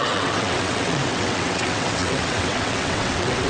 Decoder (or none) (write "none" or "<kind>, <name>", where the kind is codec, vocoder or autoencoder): vocoder, WaveNeXt